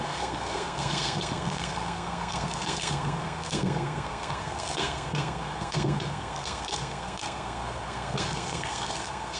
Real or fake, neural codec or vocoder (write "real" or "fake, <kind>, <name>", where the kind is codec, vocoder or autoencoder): fake, codec, SNAC